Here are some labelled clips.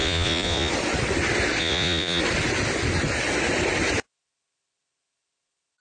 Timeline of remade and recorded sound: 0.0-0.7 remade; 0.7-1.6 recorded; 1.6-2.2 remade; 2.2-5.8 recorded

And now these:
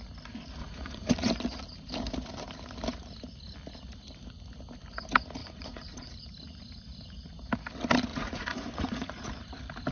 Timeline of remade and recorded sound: 0.0-0.6 recorded; 0.6-1.3 remade; 1.3-5.4 recorded; 5.4-6.2 remade; 6.2-8.1 recorded; 8.1-9.3 remade; 9.3-9.9 recorded

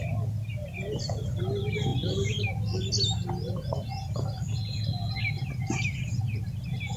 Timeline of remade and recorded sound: 0.0-7.0 recorded

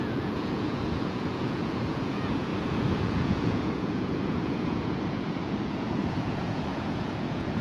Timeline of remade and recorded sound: 0.0-7.6 remade

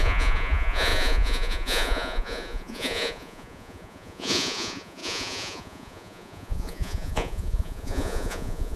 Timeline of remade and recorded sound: 0.0-8.8 remade

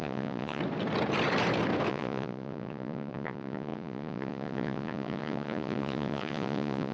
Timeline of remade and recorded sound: 0.0-0.6 remade; 0.6-1.9 recorded; 1.9-6.9 remade

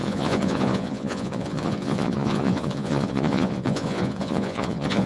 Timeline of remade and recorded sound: 0.0-5.1 remade